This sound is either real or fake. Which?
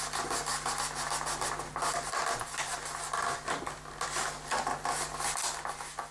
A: real